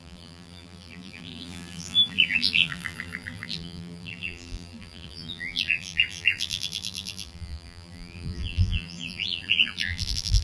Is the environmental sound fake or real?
fake